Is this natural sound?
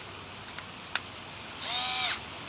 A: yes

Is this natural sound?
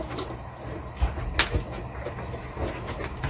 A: yes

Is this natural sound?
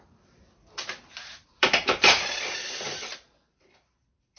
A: no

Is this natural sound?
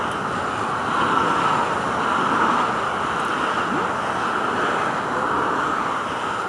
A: yes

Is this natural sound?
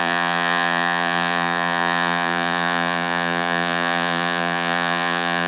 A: no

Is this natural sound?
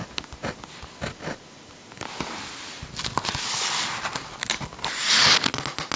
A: yes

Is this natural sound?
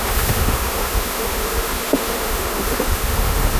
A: no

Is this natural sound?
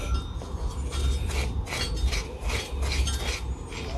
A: yes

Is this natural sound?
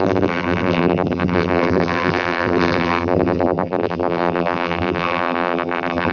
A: no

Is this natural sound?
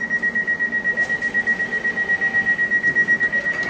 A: yes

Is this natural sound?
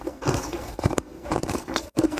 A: no